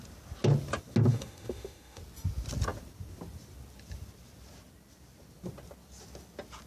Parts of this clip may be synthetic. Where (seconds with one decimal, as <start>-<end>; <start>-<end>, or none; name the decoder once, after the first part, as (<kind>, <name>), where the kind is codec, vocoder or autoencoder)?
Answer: 1.1-2.0 (autoencoder, DAC-VAE)